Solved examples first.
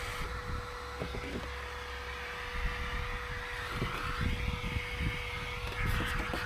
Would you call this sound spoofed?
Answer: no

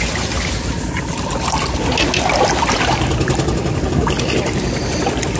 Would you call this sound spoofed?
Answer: no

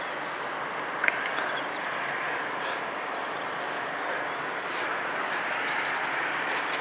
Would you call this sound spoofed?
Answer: no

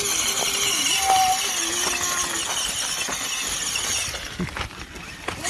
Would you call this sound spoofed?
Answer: no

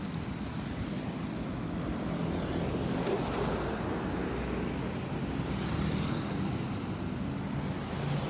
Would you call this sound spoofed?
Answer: no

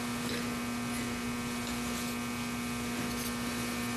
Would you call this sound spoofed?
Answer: no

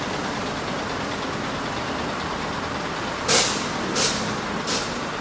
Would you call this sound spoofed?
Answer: no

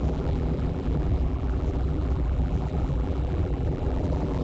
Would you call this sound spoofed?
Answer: yes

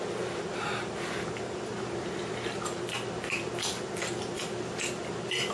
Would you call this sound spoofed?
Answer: no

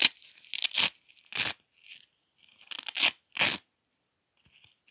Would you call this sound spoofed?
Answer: no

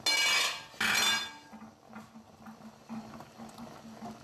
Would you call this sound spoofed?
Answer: no